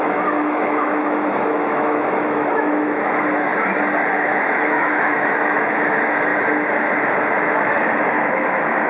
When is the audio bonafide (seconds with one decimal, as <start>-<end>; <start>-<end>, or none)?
3.5-4.1; 6.3-7.4